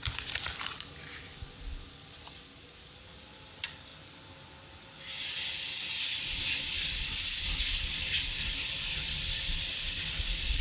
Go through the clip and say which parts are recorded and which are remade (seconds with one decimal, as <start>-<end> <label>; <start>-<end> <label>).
0.0-3.9 remade; 3.9-6.6 recorded; 6.6-10.6 remade